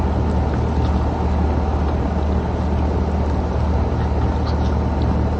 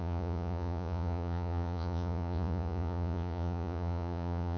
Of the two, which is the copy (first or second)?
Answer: second